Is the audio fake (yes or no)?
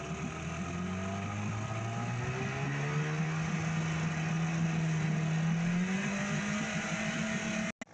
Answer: no